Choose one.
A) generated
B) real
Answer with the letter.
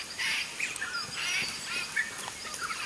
B